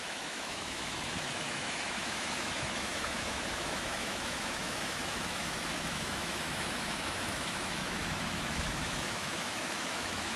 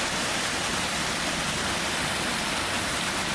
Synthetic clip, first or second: first